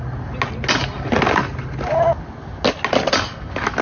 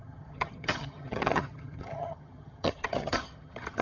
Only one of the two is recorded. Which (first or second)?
first